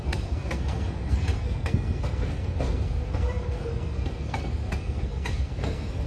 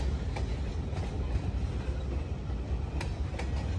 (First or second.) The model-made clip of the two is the first